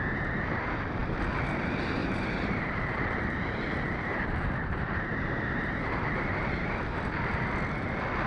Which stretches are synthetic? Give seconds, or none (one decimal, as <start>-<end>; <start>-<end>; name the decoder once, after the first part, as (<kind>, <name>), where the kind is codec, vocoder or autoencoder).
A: 2.0-7.0 (vocoder, BigVGAN v2)